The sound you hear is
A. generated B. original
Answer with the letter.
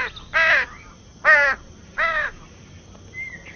B